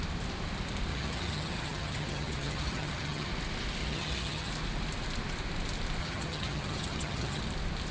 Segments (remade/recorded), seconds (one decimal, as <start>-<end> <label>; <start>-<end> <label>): 0.0-0.9 recorded; 0.9-3.3 remade; 3.3-3.8 recorded; 3.8-4.5 remade; 4.5-6.0 recorded; 6.0-7.4 remade; 7.4-7.9 recorded